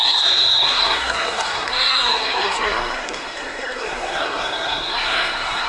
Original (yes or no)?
no